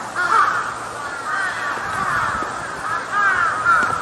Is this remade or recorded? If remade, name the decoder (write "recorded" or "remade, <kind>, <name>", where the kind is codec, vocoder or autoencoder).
recorded